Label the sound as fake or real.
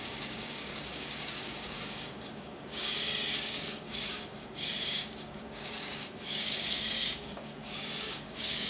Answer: fake